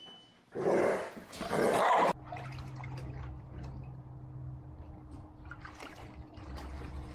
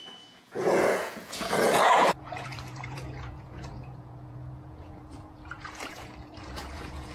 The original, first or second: first